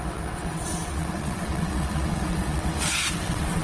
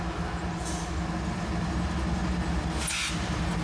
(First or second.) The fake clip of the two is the first